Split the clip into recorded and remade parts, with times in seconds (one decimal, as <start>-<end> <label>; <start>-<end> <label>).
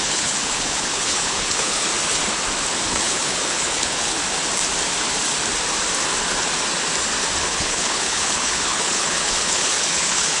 0.0-1.9 remade; 1.9-2.9 recorded; 2.9-4.2 remade; 4.2-7.4 recorded; 7.4-10.4 remade